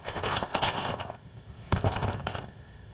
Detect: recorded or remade remade